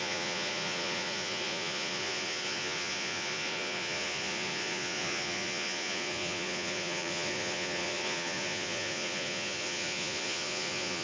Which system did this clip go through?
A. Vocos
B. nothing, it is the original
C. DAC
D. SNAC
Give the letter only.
A